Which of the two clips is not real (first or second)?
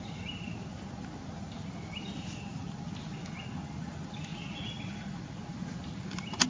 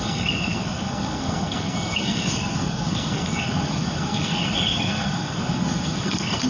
second